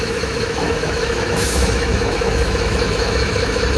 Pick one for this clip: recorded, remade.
remade